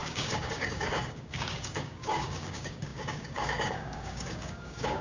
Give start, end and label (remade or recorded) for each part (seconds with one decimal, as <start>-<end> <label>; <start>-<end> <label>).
0.0-5.0 remade